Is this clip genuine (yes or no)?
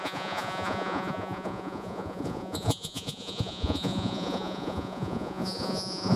no